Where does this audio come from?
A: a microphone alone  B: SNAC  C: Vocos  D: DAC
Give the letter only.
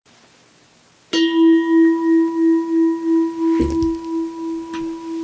A